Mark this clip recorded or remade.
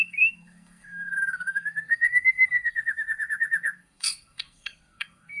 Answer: remade